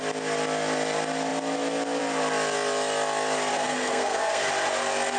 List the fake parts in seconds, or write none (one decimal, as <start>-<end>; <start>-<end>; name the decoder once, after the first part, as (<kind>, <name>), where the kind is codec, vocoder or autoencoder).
3.5-4.5 (codec, SNAC)

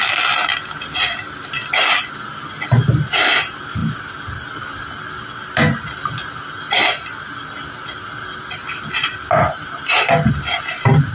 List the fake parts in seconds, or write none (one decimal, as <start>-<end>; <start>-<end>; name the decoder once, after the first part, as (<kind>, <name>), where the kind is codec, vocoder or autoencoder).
none

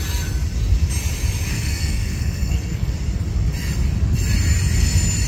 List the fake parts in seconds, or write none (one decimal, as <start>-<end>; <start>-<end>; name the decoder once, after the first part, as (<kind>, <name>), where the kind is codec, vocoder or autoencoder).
1.5-2.9 (codec, SNAC)

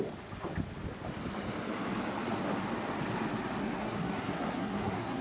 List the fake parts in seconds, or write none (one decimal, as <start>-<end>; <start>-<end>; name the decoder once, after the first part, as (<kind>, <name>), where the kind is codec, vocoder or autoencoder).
3.6-5.2 (codec, SNAC)